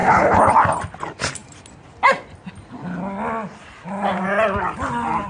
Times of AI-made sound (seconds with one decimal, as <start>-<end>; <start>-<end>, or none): 0.0-0.5